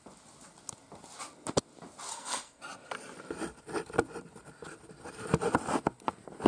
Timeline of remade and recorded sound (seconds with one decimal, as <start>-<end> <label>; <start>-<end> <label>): 0.0-2.1 recorded; 2.1-2.6 remade; 2.6-6.5 recorded